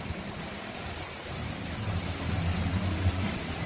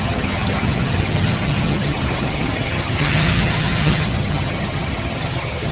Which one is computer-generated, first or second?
second